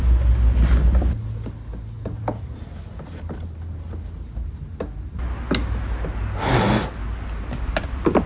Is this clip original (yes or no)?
yes